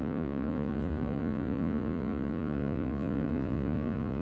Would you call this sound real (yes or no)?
no